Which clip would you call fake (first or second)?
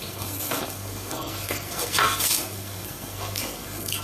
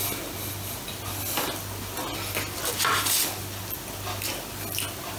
first